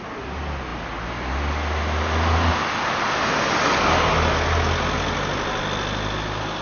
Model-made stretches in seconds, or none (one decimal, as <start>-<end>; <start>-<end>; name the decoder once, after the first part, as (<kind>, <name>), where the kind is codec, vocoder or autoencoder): none